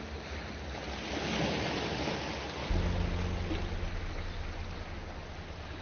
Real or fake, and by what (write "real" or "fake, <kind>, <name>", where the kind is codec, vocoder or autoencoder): real